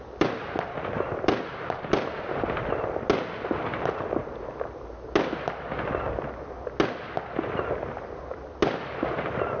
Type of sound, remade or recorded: recorded